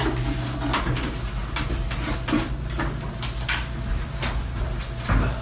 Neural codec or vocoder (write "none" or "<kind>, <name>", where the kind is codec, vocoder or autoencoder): none